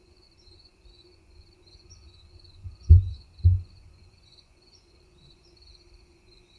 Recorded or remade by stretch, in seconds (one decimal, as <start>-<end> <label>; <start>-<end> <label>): 0.0-6.6 remade